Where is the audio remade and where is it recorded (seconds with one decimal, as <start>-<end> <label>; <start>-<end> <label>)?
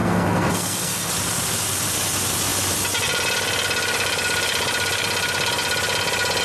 0.0-1.1 remade; 1.1-6.4 recorded